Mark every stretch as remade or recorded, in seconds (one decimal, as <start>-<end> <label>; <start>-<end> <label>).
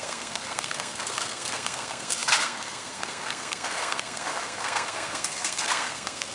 0.0-6.3 remade